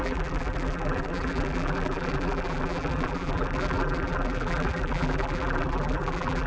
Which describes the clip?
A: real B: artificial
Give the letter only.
B